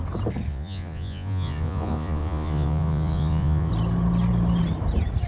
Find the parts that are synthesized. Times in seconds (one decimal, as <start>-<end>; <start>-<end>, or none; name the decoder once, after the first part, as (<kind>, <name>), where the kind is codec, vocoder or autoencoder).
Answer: 0.5-3.7 (vocoder, Vocos)